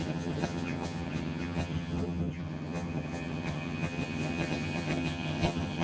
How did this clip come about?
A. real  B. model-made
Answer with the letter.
B